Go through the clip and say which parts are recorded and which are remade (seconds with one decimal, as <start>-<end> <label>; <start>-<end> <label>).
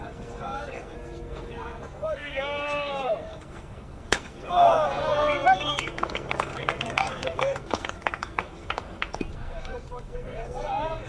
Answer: 0.0-11.1 remade